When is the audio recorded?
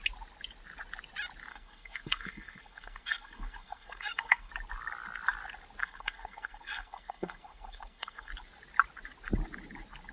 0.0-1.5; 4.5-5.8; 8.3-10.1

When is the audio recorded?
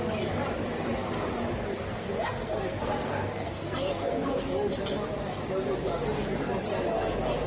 0.0-1.9; 4.5-7.5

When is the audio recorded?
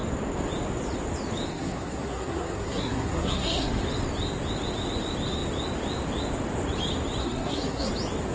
0.0-1.5; 3.8-7.2; 7.9-8.3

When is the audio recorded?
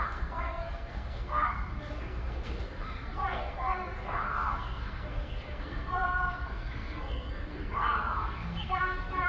none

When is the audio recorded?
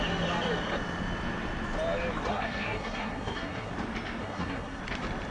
0.0-2.3; 3.7-4.2; 4.8-5.3